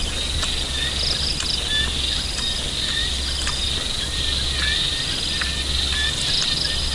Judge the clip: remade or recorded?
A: recorded